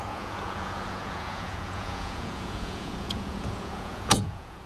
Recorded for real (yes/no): no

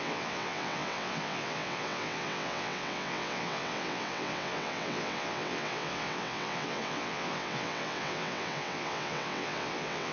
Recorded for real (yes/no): no